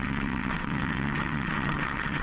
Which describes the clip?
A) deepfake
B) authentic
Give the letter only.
A